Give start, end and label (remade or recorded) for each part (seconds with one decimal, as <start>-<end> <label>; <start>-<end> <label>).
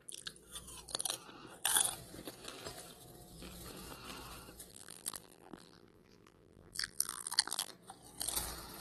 0.0-4.7 recorded; 4.7-7.7 remade; 7.7-8.8 recorded